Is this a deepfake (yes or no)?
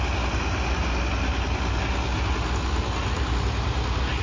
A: no